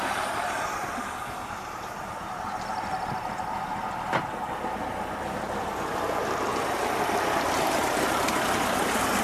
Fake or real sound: real